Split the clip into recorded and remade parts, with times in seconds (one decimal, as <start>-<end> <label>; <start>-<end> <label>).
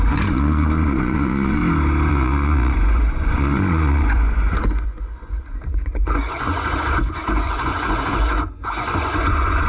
0.0-1.6 remade; 1.6-2.1 recorded; 2.1-9.7 remade